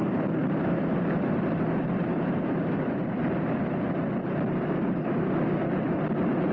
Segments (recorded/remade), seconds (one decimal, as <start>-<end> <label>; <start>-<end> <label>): 0.0-0.4 recorded; 0.4-3.0 remade; 3.0-6.5 recorded

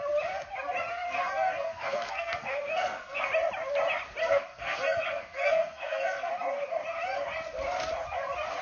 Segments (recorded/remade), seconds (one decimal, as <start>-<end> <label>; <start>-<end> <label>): 0.0-0.9 recorded; 0.9-3.3 remade; 3.3-4.2 recorded; 4.2-6.3 remade; 6.3-8.6 recorded

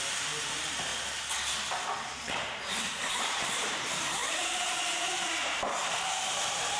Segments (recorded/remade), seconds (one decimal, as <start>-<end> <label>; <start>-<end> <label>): 0.0-0.9 remade; 0.9-3.2 recorded; 3.2-6.8 remade

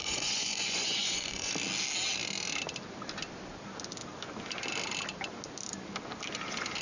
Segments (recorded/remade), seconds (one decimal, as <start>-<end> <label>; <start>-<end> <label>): 0.0-1.5 remade; 1.5-6.8 recorded

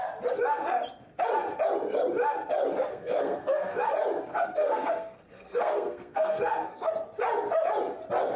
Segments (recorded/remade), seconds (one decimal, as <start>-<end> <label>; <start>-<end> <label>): 0.0-2.9 recorded; 2.9-3.8 remade; 3.8-4.3 recorded; 4.3-6.9 remade; 6.9-8.4 recorded